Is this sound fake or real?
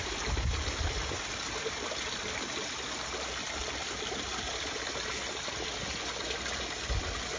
real